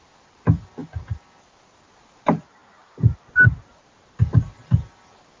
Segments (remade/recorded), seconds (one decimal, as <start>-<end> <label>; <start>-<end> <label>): 0.0-0.8 remade; 0.8-2.1 recorded; 2.1-2.6 remade; 2.6-3.4 recorded; 3.4-5.4 remade